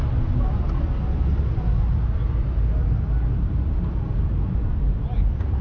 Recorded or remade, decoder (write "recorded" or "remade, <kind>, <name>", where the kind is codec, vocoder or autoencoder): recorded